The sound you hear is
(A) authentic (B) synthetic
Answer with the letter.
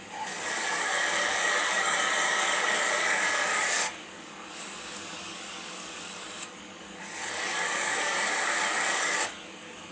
B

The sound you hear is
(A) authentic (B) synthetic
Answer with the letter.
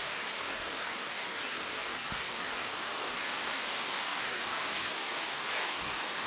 B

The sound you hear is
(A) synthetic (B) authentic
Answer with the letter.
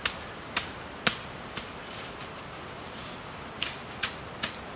B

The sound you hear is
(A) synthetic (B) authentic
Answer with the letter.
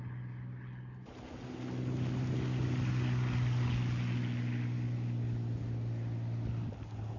B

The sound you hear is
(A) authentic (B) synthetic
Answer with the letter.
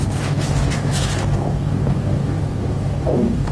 B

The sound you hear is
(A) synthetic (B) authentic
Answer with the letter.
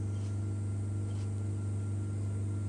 B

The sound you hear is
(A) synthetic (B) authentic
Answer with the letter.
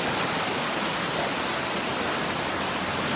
B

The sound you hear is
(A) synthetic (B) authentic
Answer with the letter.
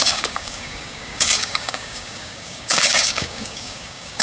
A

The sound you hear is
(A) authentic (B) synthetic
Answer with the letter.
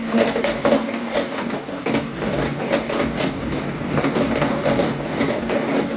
B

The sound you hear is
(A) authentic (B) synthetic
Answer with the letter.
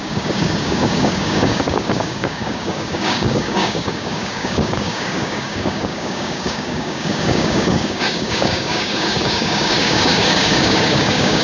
B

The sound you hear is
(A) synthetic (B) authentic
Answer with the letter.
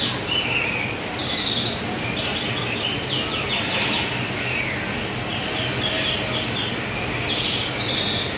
B